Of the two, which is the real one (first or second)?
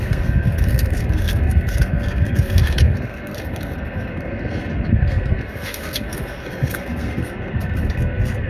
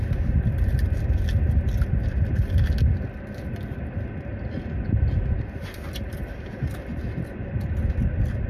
second